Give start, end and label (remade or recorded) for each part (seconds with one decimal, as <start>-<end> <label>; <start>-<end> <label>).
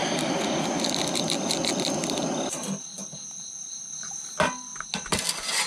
0.0-5.7 recorded